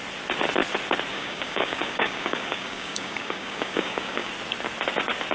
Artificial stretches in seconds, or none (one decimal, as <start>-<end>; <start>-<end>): 1.1-4.3